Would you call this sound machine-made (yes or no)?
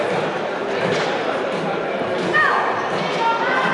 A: no